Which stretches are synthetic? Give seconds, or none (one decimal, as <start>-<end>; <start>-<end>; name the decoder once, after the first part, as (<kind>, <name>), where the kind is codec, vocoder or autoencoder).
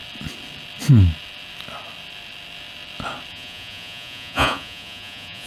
3.3-5.5 (vocoder, Vocos)